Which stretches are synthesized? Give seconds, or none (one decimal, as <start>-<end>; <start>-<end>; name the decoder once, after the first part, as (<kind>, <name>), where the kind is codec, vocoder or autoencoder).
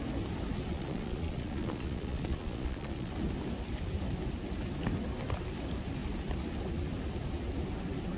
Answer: 0.7-3.1 (vocoder, Vocos)